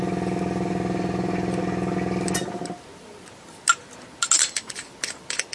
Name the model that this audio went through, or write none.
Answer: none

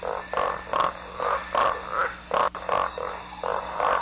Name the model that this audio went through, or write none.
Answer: none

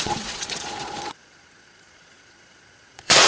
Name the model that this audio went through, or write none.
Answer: vocoder, Vocos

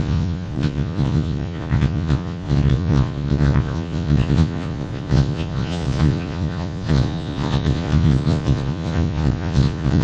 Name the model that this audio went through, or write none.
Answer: vocoder, Vocos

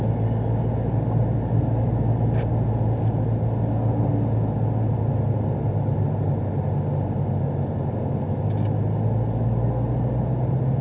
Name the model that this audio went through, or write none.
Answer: none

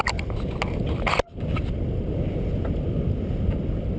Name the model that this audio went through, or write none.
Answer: none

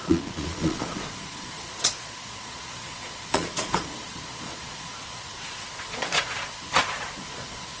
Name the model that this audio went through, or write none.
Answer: vocoder, Vocos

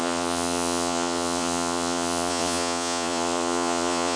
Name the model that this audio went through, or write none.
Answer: vocoder, Vocos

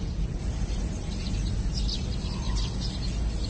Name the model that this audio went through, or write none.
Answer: none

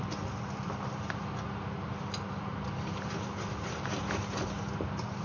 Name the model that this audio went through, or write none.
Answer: none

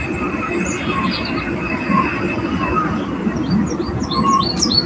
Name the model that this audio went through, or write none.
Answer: none